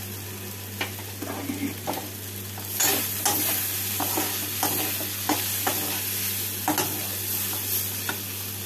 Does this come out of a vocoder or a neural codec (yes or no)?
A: no